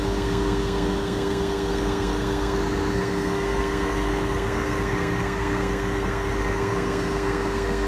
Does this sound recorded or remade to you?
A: remade